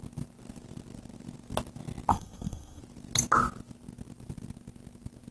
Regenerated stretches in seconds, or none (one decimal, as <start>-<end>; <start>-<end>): 2.1-2.8